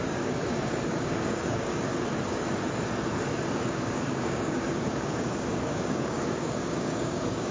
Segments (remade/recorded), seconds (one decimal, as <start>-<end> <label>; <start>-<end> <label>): 0.0-1.9 remade; 1.9-3.5 recorded; 3.5-7.5 remade